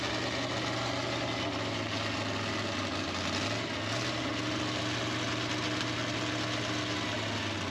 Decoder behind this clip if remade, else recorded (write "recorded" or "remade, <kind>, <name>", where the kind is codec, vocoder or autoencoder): recorded